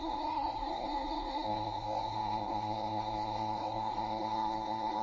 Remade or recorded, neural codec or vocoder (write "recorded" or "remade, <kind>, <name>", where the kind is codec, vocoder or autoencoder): remade, codec, SNAC